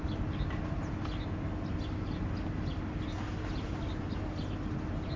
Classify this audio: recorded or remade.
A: recorded